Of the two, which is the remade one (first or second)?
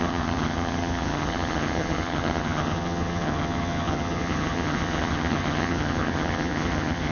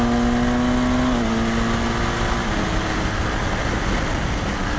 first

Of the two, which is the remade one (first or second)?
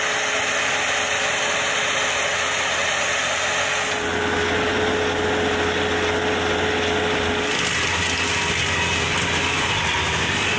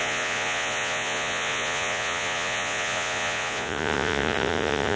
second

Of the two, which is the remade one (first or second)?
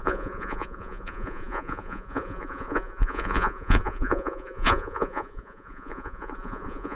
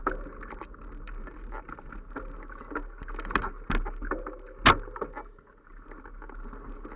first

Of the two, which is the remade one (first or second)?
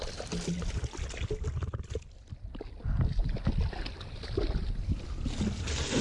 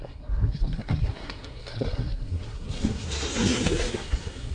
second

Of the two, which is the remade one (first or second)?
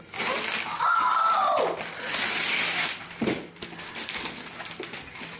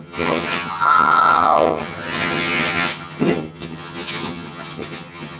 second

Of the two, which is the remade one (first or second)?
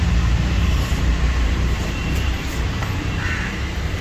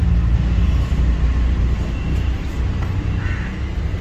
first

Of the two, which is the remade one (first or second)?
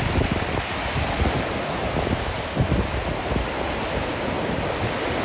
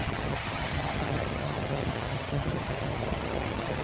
second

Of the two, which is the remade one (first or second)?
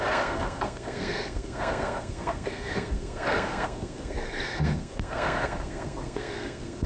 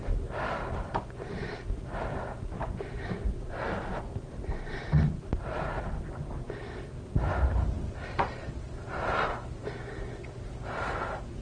first